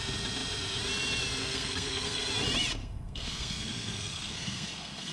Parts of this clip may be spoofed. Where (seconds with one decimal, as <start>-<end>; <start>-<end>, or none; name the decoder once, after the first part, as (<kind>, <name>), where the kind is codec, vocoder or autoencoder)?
1.4-2.3 (codec, SNAC); 2.8-5.1